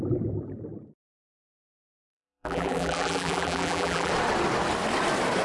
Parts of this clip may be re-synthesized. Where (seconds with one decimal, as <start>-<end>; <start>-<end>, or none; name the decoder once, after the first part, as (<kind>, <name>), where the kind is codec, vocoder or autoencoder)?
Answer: 1.4-4.1 (vocoder, BigVGAN v2)